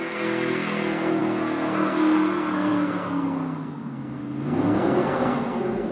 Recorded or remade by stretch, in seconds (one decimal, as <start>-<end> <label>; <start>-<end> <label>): 0.0-5.9 remade